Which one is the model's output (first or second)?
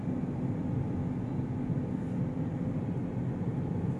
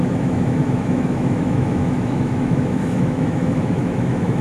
second